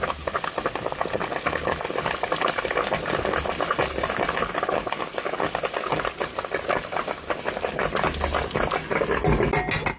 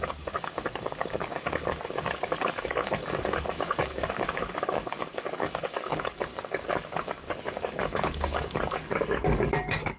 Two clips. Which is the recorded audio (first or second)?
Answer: first